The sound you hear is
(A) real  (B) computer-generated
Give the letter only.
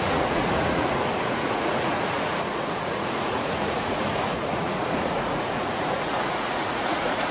B